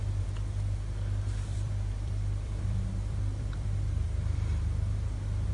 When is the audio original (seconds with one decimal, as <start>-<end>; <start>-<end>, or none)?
0.0-1.3; 4.6-5.5

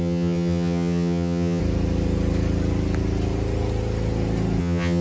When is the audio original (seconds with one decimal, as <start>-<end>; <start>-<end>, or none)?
1.6-4.6

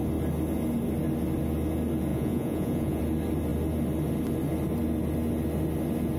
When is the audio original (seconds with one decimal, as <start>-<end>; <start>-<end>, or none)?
0.0-2.1; 3.0-6.2

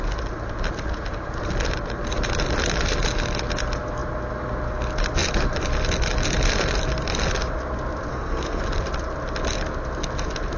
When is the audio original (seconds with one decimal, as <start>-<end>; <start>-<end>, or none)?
0.0-8.1; 8.6-10.6

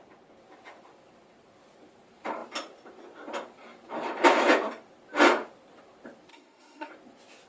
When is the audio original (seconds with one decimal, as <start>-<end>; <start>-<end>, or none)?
0.0-6.3; 6.9-7.5